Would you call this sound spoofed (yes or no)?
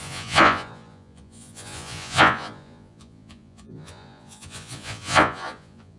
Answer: yes